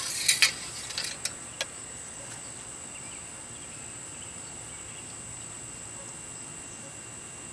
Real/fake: real